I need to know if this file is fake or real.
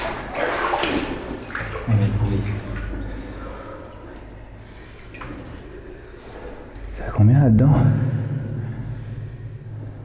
real